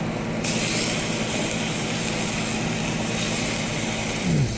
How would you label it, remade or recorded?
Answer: recorded